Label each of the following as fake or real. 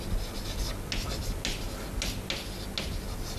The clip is real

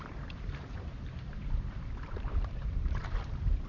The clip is fake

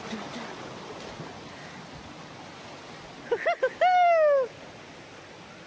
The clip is real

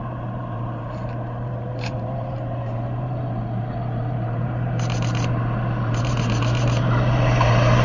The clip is fake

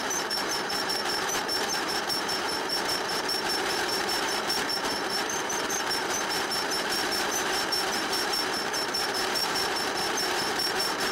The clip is fake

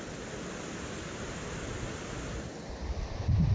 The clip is real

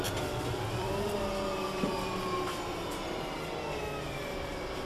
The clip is real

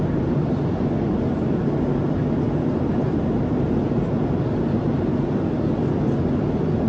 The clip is real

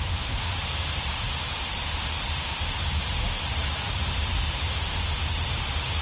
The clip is fake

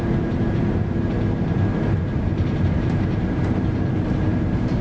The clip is fake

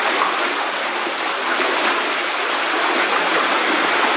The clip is real